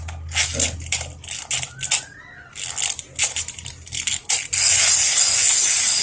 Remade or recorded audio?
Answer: recorded